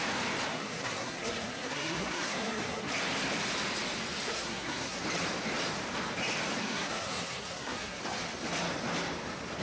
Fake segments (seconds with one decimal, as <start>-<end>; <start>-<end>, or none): 0.5-2.9; 4.3-5.0; 6.6-8.0